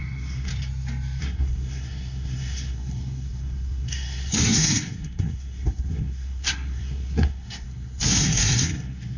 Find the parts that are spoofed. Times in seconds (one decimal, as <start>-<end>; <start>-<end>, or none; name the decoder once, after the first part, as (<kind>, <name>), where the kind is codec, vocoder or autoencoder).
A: 0.0-0.5 (codec, SNAC); 1.2-9.2